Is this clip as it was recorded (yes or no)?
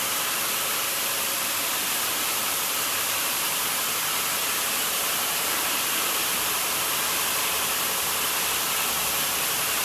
no